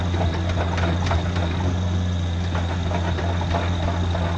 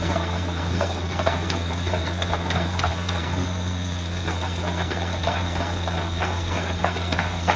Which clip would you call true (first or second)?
first